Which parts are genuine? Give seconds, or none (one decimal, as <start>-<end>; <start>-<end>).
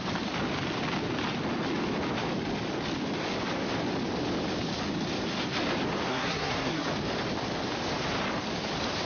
0.0-6.1; 6.9-9.1